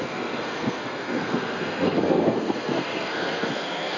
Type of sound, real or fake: fake